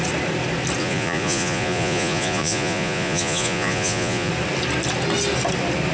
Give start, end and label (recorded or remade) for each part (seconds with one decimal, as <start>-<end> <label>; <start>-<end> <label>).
0.0-0.8 recorded; 0.8-4.3 remade; 4.3-5.9 recorded